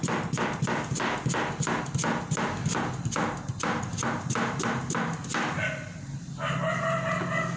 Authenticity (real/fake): real